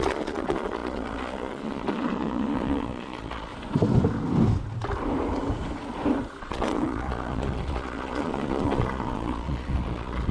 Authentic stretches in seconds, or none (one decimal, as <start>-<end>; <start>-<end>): 3.5-6.4